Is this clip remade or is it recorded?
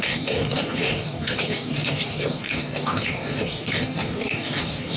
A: remade